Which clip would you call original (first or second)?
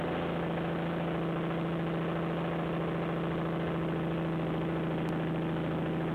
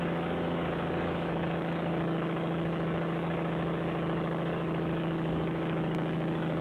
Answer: first